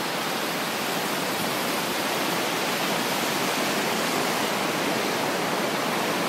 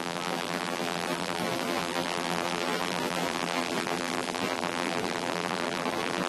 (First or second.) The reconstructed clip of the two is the second